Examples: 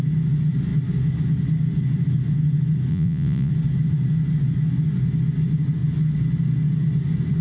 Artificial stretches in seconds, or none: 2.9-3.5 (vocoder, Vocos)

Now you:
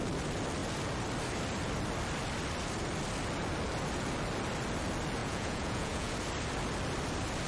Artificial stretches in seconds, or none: 5.2-6.1 (vocoder, Vocos)